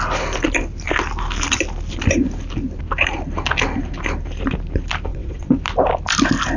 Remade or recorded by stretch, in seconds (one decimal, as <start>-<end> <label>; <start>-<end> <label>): 0.0-5.1 recorded; 5.1-5.6 remade; 5.6-6.6 recorded